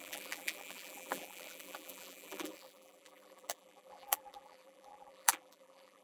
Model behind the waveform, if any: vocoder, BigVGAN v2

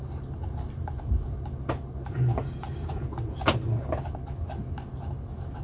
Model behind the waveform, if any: none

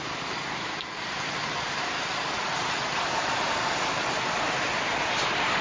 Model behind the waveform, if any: none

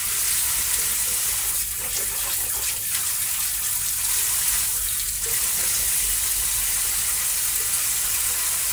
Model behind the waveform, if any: none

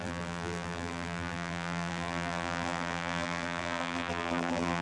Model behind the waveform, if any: vocoder, BigVGAN v2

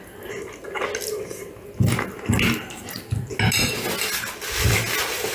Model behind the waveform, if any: none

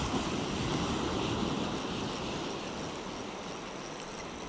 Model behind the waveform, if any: none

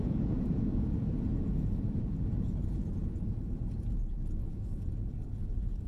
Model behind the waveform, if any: vocoder, Vocos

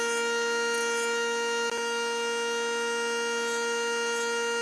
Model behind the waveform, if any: none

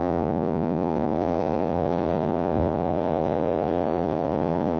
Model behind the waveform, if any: vocoder, Vocos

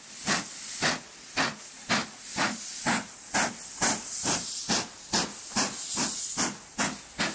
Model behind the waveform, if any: none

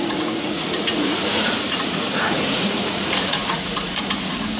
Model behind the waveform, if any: vocoder, Vocos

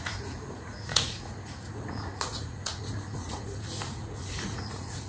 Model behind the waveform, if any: vocoder, Vocos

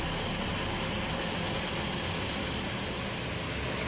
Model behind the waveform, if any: none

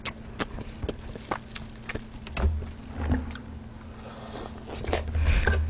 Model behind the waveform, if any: none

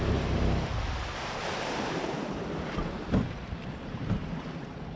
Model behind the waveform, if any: vocoder, BigVGAN v2